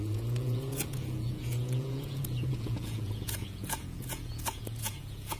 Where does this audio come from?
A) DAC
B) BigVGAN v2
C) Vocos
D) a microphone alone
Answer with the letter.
C